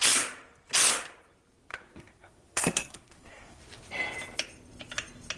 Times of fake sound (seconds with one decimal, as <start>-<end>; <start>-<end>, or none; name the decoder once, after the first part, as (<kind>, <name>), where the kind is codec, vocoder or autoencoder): 1.7-3.6 (codec, SNAC)